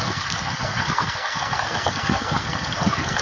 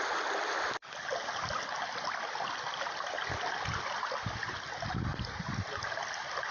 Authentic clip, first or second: second